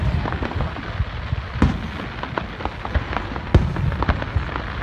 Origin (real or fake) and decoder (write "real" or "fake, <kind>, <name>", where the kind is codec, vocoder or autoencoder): real